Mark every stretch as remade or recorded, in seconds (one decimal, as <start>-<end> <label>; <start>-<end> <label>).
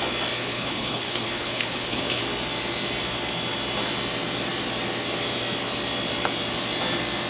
0.0-0.4 recorded; 0.4-2.2 remade; 2.2-7.3 recorded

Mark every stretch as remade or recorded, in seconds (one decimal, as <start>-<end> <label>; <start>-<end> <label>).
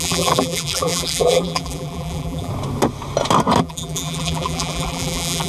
0.0-2.5 remade; 2.5-3.6 recorded; 3.6-5.5 remade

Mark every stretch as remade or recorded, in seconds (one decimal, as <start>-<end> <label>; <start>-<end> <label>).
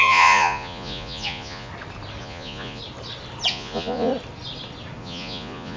0.0-1.7 remade; 1.7-2.2 recorded; 2.2-2.8 remade; 2.8-3.5 recorded; 3.5-4.1 remade; 4.1-5.0 recorded; 5.0-5.8 remade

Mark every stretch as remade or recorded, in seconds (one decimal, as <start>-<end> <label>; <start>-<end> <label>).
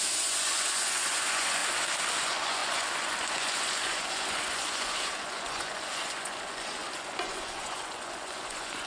0.0-1.6 remade; 1.6-2.2 recorded; 2.2-8.9 remade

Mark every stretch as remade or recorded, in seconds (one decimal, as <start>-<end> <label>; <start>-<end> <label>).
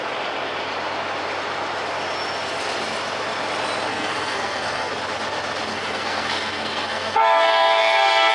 0.0-3.9 recorded; 3.9-4.9 remade; 4.9-5.7 recorded; 5.7-8.3 remade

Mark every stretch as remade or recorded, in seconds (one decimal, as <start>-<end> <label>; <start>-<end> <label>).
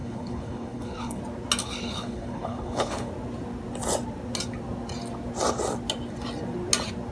0.0-1.2 remade; 1.2-1.6 recorded; 1.6-3.1 remade; 3.1-7.1 recorded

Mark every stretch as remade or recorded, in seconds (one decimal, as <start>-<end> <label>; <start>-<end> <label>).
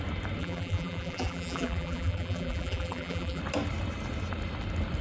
0.0-0.4 recorded; 0.4-3.4 remade; 3.4-5.0 recorded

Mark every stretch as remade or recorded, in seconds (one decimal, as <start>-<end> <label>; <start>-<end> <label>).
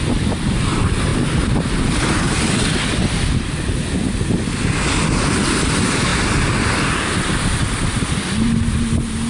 0.0-9.3 recorded